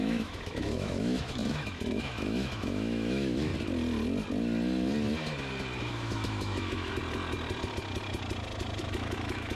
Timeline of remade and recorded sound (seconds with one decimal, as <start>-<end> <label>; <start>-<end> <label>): 0.0-3.5 remade; 3.5-5.8 recorded; 5.8-7.0 remade; 7.0-8.8 recorded; 8.8-9.5 remade